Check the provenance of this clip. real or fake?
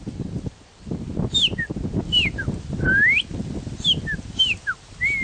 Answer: real